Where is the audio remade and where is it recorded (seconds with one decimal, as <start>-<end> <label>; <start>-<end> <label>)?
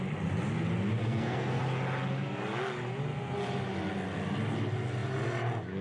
0.0-1.0 recorded; 1.0-1.6 remade; 1.6-5.8 recorded